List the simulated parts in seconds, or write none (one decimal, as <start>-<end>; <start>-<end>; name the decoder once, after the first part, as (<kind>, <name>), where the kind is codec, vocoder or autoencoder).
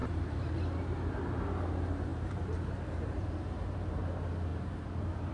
0.0-0.5 (vocoder, BigVGAN v2); 2.1-4.1; 4.5-5.3